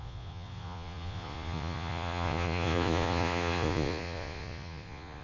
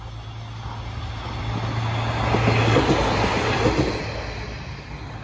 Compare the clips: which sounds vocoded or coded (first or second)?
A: first